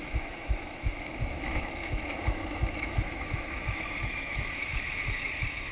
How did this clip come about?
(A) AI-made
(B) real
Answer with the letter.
A